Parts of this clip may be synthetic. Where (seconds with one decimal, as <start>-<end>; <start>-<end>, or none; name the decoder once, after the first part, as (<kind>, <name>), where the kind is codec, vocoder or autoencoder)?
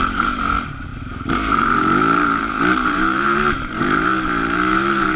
0.0-5.2 (vocoder, BigVGAN v2)